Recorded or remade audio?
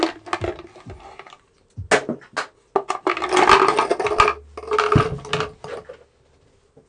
recorded